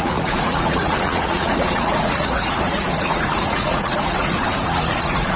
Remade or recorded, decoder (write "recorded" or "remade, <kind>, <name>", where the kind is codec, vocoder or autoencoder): remade, vocoder, Vocos